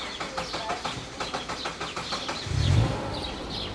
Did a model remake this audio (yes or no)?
yes